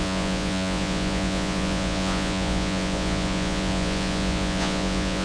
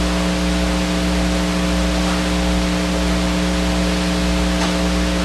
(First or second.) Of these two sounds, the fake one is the first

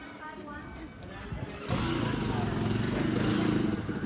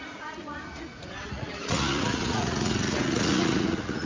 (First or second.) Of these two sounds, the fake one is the second